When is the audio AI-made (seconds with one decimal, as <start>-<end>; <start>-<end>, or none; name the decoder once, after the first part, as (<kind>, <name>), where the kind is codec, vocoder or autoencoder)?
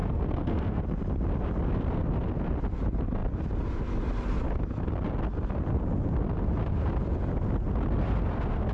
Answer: 0.0-0.8 (codec, SNAC)